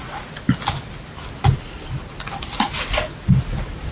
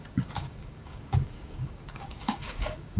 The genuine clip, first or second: first